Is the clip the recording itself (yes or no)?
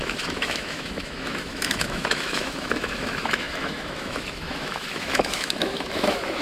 no